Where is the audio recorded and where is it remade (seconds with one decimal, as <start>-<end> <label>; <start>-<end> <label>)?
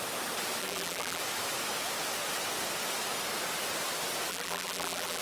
0.0-0.6 recorded; 0.6-1.2 remade; 1.2-4.3 recorded; 4.3-5.2 remade